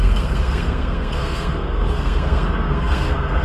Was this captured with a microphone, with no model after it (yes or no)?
no